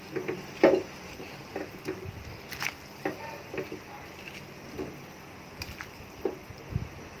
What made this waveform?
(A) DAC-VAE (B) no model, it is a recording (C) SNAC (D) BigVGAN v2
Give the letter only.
B